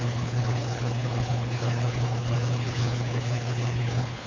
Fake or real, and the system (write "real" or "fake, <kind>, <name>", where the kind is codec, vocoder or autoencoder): fake, codec, HILCodec